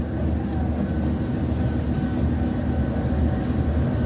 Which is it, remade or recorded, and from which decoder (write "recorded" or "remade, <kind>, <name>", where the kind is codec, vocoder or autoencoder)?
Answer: recorded